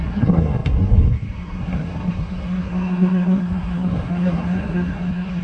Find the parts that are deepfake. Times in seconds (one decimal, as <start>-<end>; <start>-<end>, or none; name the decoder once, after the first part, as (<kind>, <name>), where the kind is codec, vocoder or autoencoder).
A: 0.0-5.4 (codec, SNAC)